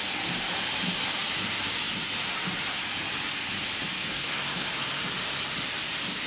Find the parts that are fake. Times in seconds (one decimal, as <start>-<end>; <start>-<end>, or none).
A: 4.1-4.7